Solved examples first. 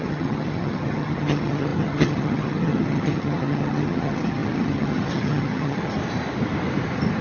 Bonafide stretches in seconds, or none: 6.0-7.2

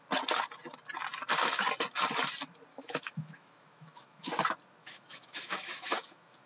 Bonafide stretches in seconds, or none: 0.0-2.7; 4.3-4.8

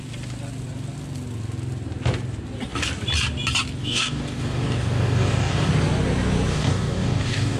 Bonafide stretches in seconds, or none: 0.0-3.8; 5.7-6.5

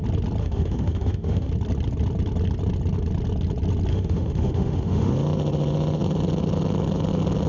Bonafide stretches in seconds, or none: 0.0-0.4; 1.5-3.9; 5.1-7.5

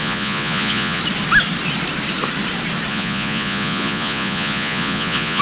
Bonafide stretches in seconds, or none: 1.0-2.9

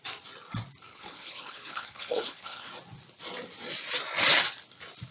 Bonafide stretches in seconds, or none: 0.0-0.9; 2.7-5.1